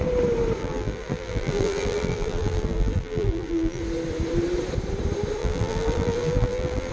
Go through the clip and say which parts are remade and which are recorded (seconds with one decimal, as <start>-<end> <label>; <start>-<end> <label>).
0.0-0.6 recorded; 0.6-3.8 remade; 3.8-5.4 recorded; 5.4-6.9 remade

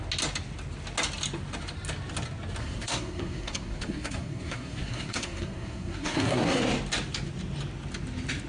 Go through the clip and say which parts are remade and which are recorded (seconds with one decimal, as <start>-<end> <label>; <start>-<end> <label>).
0.0-2.6 recorded; 2.6-6.6 remade; 6.6-8.5 recorded

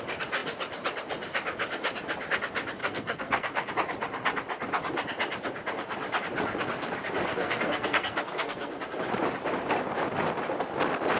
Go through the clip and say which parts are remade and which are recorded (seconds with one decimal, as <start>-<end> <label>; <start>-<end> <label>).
0.0-2.8 recorded; 2.8-3.7 remade; 3.7-7.3 recorded; 7.3-8.8 remade; 8.8-11.2 recorded

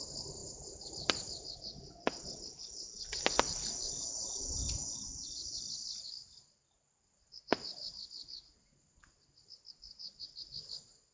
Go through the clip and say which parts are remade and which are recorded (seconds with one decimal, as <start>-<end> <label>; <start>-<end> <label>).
0.0-11.1 recorded